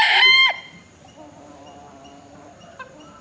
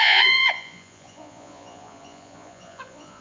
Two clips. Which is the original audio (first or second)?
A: first